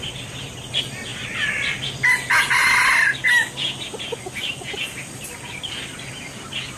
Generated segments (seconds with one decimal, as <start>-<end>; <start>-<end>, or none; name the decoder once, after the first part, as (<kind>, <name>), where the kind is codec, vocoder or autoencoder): 1.1-1.8 (vocoder, BigVGAN v2)